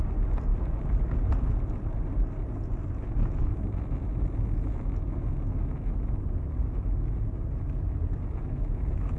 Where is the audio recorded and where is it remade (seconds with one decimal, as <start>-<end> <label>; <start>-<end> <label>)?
0.0-9.2 recorded